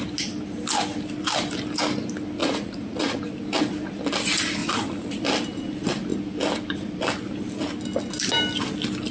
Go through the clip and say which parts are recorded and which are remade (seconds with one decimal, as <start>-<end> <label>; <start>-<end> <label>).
0.0-2.4 recorded; 2.4-3.2 remade; 3.2-4.6 recorded; 4.6-5.2 remade; 5.2-9.1 recorded